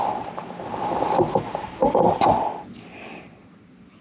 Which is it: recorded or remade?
remade